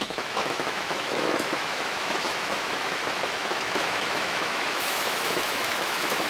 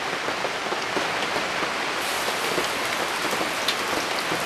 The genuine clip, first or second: second